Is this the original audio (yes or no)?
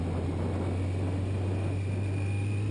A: yes